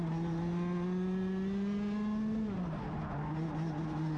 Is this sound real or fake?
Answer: real